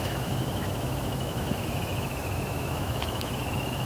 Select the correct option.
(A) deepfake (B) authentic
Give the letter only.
A